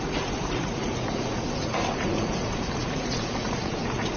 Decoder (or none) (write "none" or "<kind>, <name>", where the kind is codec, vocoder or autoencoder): vocoder, Vocos